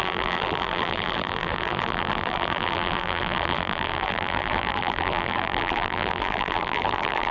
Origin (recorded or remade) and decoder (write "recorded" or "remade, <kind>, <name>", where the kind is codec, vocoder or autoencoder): remade, vocoder, BigVGAN v2